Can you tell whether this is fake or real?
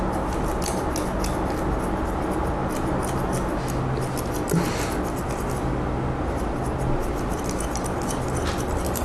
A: real